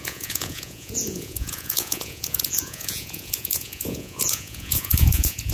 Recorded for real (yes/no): no